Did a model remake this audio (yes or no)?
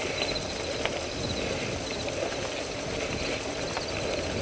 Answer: no